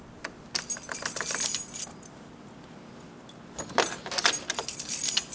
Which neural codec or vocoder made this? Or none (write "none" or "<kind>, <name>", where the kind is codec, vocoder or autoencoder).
none